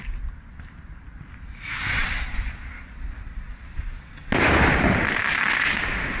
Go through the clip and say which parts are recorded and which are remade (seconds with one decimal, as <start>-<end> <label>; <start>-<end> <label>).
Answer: 0.0-6.2 recorded